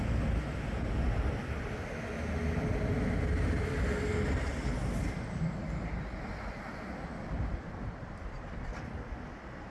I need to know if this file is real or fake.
real